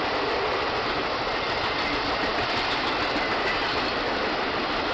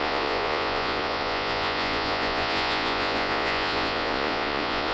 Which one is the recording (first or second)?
first